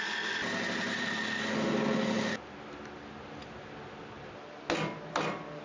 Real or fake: real